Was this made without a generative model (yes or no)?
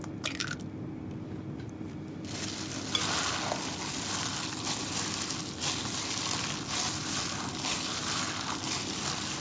yes